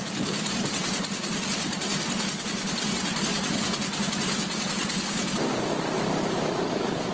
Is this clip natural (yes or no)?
yes